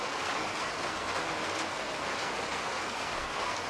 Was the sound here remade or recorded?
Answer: remade